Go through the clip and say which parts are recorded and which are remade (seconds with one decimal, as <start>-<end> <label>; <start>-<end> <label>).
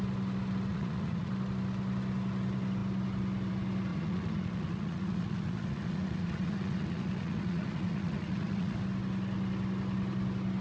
0.0-0.7 recorded; 0.7-1.3 remade; 1.3-3.9 recorded; 3.9-8.8 remade; 8.8-10.6 recorded